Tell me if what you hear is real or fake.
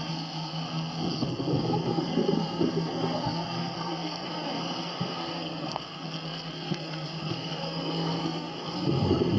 fake